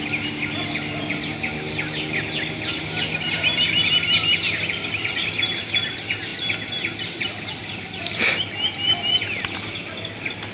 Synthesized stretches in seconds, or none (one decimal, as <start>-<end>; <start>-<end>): none